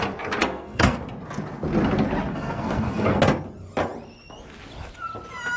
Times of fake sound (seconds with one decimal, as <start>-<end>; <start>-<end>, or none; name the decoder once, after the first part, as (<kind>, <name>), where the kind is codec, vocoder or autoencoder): 0.4-1.0 (codec, SNAC); 2.3-3.2